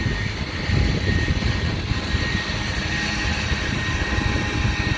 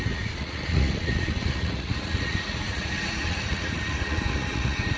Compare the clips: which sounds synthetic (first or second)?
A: second